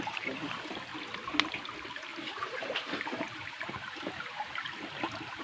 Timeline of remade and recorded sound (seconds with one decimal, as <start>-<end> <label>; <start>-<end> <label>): 0.0-0.9 remade; 0.9-1.6 recorded; 1.6-5.4 remade